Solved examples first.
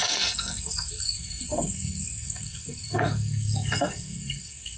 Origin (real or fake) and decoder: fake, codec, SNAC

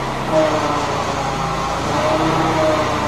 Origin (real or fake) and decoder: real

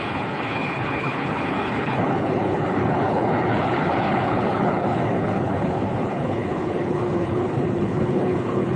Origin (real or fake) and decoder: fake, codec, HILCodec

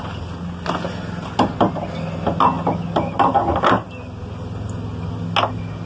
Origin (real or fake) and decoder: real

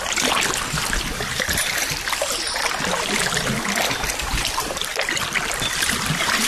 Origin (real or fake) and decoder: real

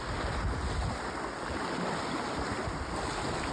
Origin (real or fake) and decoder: real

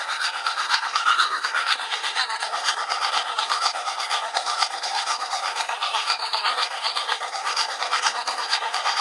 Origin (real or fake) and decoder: fake, codec, SNAC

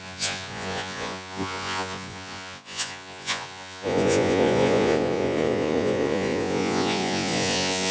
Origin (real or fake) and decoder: fake, vocoder, Vocos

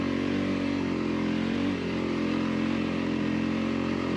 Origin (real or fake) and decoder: real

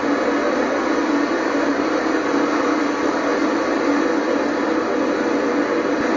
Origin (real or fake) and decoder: real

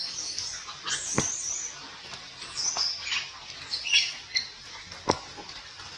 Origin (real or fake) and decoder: real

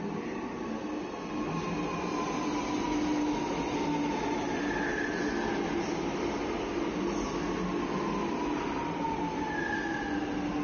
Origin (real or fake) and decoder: real